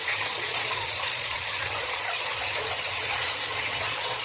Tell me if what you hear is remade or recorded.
remade